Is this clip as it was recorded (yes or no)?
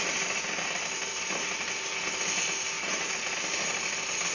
yes